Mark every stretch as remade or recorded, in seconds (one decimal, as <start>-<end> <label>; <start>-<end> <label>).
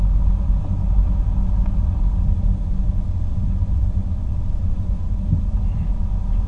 0.0-4.0 recorded; 4.0-4.7 remade; 4.7-6.5 recorded